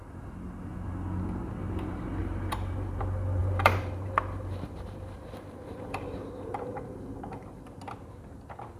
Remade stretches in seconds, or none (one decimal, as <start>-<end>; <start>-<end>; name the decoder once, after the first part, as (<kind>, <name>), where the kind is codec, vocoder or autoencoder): 2.2-3.0 (vocoder, BigVGAN v2); 3.4-7.8